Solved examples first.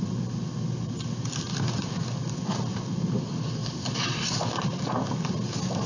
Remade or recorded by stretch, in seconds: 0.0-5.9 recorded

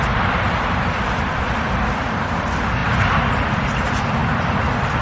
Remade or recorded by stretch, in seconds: 0.0-5.0 remade

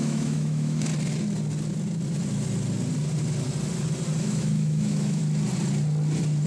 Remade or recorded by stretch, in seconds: 0.0-0.9 remade; 0.9-4.2 recorded; 4.2-5.2 remade; 5.2-6.5 recorded

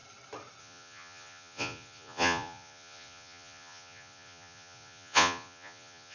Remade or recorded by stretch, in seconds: 0.0-0.6 recorded; 0.6-6.1 remade

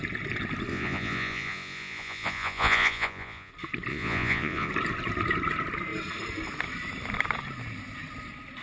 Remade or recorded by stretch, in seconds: 0.0-0.7 recorded; 0.7-3.5 remade; 3.5-3.9 recorded; 3.9-4.7 remade; 4.7-8.6 recorded

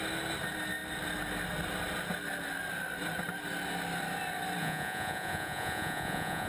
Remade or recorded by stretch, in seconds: 0.0-4.6 recorded; 4.6-6.5 remade

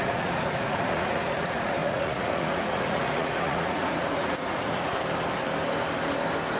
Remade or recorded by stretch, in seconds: 0.0-4.9 remade; 4.9-6.6 recorded

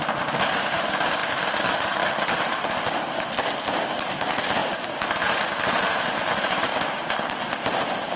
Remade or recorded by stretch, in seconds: 0.0-8.2 remade